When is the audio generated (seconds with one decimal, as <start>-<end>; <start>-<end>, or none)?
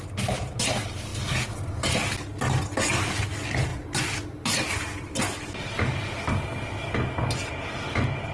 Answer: none